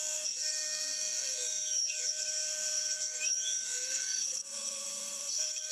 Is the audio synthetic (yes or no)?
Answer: yes